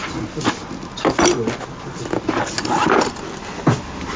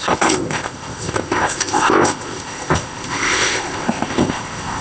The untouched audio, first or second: first